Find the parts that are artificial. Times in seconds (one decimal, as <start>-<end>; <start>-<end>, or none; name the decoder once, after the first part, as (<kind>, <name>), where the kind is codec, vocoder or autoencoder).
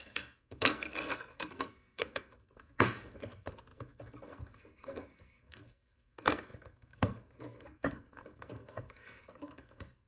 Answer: 0.0-10.1 (codec, SNAC)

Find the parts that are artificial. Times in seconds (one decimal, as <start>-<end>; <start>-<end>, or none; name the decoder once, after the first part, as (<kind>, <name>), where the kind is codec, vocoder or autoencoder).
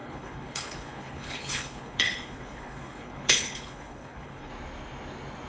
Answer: 0.0-4.5 (codec, HILCodec)